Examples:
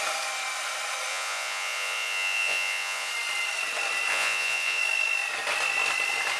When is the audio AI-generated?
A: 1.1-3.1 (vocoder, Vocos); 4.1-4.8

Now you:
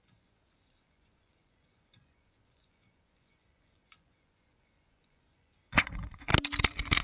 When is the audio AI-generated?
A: 0.0-6.3 (vocoder, Vocos)

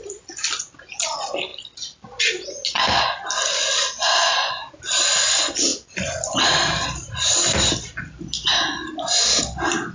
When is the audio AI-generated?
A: 5.7-8.2 (vocoder, BigVGAN v2)

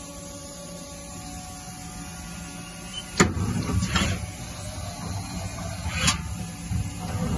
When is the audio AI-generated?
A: 0.4-0.9 (vocoder, BigVGAN v2); 2.9-4.1

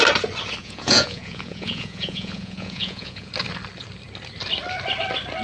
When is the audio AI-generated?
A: 0.6-3.3 (vocoder, Vocos)

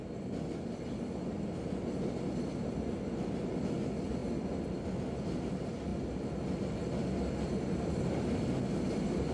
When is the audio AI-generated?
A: none